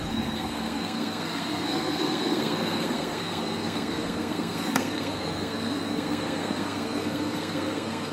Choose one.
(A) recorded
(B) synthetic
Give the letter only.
B